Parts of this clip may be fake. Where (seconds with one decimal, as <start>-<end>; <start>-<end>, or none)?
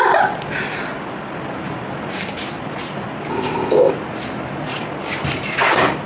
3.3-3.9